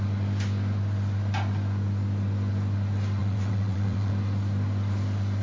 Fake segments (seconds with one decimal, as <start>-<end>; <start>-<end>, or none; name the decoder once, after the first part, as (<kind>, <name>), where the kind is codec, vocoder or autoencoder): 3.2-4.1 (vocoder, WaveNeXt)